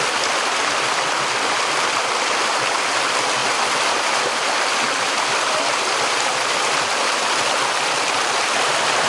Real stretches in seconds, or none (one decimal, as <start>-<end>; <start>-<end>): 0.0-9.1